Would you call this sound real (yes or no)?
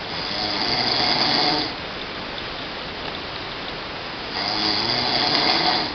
yes